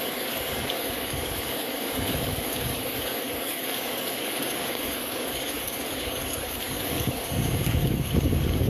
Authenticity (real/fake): fake